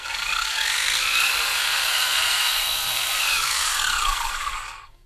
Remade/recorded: remade